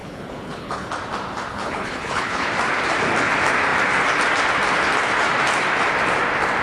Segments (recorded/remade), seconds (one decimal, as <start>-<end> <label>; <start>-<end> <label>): 0.0-0.9 remade; 0.9-1.5 recorded; 1.5-2.5 remade; 2.5-6.6 recorded